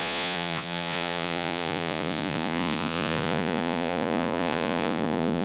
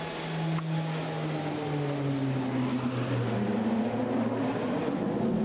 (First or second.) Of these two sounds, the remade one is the first